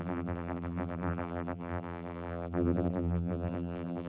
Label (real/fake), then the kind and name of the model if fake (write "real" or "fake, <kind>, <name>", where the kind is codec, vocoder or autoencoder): fake, vocoder, BigVGAN v2